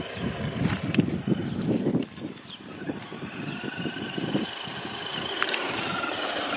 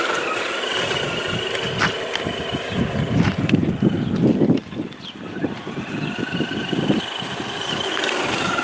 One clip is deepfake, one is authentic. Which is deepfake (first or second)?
first